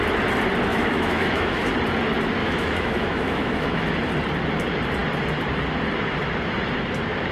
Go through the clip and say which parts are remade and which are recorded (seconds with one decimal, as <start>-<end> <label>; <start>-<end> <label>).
0.0-0.7 recorded; 0.7-1.7 remade; 1.7-2.4 recorded; 2.4-3.9 remade; 3.9-7.3 recorded